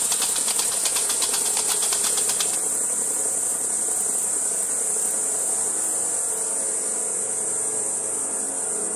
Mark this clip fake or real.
real